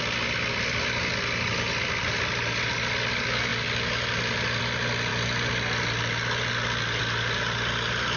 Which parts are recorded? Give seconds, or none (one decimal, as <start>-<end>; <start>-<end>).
0.0-8.2